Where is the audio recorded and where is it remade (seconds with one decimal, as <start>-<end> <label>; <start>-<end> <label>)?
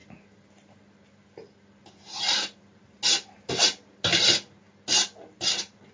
0.0-5.9 recorded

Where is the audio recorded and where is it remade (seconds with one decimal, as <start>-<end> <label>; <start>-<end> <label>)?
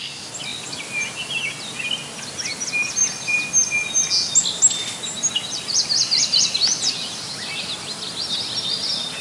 0.0-9.2 recorded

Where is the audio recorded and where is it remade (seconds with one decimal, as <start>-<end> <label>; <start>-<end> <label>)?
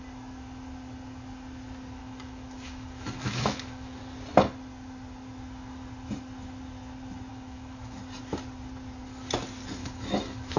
0.0-2.0 recorded; 2.0-4.0 remade; 4.0-7.3 recorded; 7.3-8.0 remade; 8.0-9.8 recorded; 9.8-10.6 remade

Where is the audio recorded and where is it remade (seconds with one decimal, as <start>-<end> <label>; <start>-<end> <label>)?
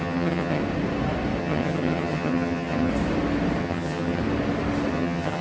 0.0-0.6 remade; 0.6-1.4 recorded; 1.4-2.9 remade; 2.9-3.6 recorded; 3.6-4.2 remade; 4.2-4.9 recorded; 4.9-5.4 remade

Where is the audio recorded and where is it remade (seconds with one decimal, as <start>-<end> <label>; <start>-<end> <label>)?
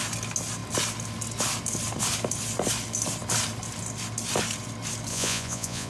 0.0-5.1 recorded; 5.1-5.9 remade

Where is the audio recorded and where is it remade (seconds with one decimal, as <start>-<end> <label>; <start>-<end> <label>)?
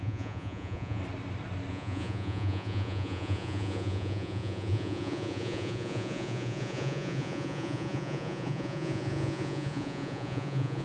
0.0-1.0 remade; 1.0-1.7 recorded; 1.7-10.8 remade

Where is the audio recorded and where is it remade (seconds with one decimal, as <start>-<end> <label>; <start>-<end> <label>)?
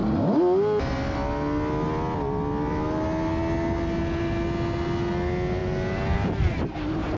0.0-7.2 recorded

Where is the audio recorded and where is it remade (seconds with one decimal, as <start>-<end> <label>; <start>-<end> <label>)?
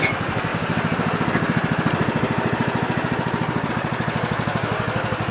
0.0-5.3 recorded